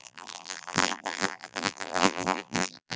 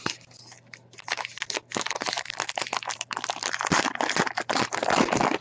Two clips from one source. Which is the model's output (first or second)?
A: first